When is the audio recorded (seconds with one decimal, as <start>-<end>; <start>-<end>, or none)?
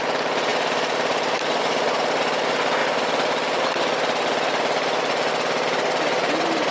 0.0-0.5; 1.6-2.8; 5.3-6.7